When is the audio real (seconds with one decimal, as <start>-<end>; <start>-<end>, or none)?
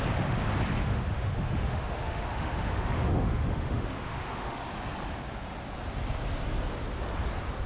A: 0.0-0.8; 4.6-7.7